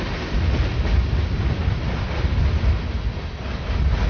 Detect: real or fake real